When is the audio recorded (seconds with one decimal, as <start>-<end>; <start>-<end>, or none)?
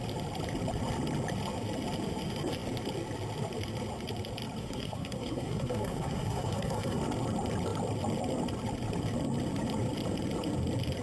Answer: 0.0-4.6; 7.0-11.0